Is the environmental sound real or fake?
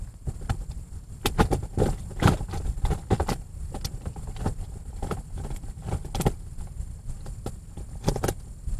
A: real